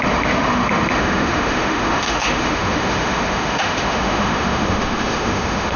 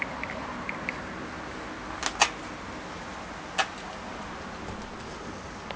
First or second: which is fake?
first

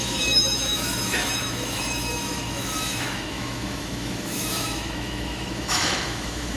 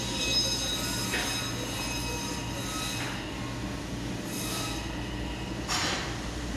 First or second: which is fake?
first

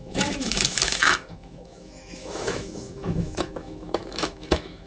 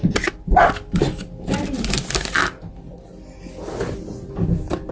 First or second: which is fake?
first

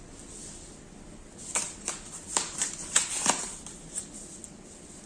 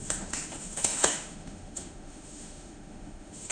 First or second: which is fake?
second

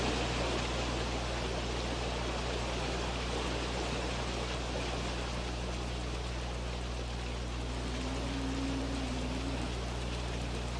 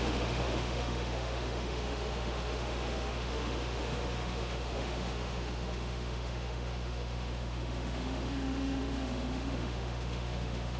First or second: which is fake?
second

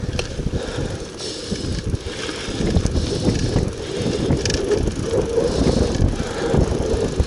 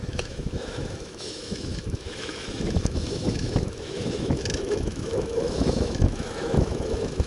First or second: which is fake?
second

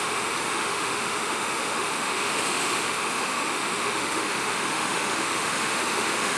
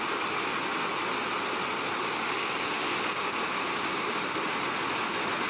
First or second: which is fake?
first